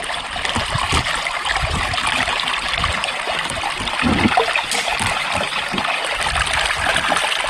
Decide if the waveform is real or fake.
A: real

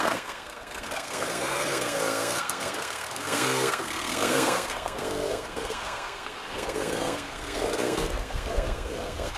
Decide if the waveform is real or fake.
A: fake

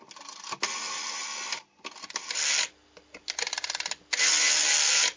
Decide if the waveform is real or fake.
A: real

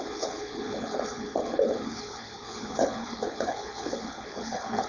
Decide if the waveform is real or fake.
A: fake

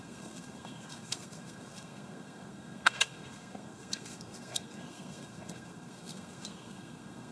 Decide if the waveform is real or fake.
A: fake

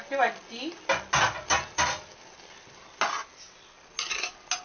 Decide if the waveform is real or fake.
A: real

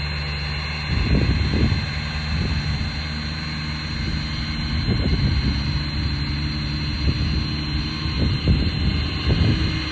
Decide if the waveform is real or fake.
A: real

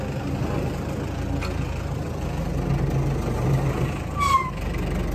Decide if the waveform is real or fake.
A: real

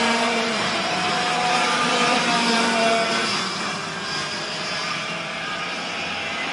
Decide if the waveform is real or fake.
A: fake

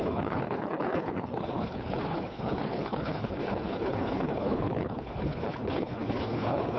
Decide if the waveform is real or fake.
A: fake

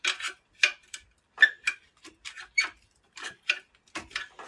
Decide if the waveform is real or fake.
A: fake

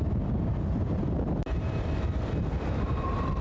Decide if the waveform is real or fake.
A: real